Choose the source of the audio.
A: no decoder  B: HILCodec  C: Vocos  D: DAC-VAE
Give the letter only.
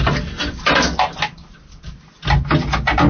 A